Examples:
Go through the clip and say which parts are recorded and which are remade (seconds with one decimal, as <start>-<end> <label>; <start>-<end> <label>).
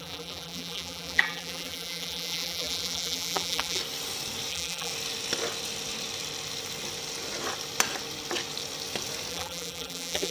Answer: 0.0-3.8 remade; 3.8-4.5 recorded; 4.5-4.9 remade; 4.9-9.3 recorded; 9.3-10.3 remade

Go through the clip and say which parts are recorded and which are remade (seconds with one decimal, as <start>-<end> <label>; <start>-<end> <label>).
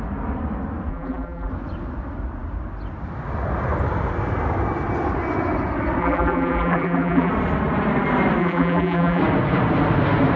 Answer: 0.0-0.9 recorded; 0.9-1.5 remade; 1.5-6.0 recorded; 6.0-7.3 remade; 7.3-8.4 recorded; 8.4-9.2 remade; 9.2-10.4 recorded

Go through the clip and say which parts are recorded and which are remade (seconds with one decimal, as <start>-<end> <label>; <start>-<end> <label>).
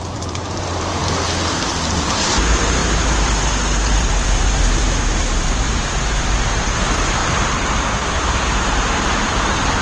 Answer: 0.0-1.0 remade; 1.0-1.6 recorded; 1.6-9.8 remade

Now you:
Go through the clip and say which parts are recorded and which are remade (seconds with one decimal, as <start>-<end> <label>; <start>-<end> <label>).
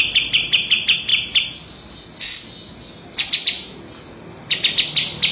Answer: 0.0-1.1 remade; 1.1-4.3 recorded; 4.3-5.3 remade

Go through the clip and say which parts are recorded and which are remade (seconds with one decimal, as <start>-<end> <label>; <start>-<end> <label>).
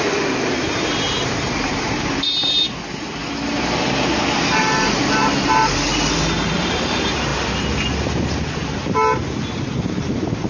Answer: 0.0-3.2 remade; 3.2-4.6 recorded; 4.6-5.9 remade; 5.9-6.5 recorded; 6.5-7.3 remade; 7.3-9.6 recorded; 9.6-10.5 remade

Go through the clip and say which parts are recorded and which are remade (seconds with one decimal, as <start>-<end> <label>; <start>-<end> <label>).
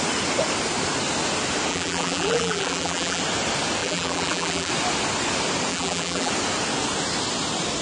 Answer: 0.0-1.7 recorded; 1.7-3.2 remade; 3.2-3.8 recorded; 3.8-4.7 remade; 4.7-5.7 recorded; 5.7-6.3 remade; 6.3-7.8 recorded